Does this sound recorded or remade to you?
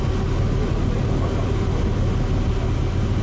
recorded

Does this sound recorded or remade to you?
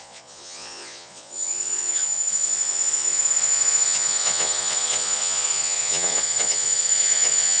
remade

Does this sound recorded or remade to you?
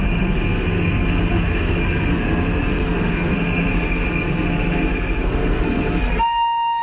remade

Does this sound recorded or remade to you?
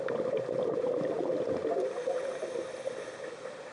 recorded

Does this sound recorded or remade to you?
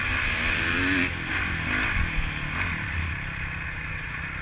recorded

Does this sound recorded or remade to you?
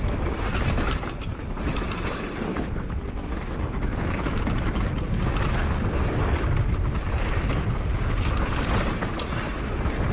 recorded